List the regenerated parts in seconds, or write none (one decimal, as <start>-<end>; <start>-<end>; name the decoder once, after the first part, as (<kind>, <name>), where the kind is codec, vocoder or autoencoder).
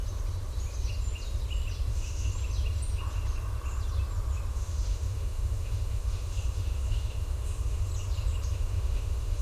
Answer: 1.9-2.3 (autoencoder, DAC-VAE); 4.5-7.9; 8.5-9.4